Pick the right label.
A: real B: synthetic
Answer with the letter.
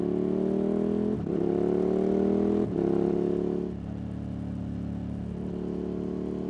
A